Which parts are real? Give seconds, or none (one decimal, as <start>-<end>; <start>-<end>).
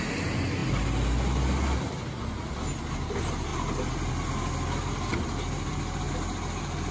0.0-6.9